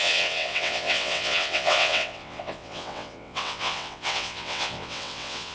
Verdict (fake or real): fake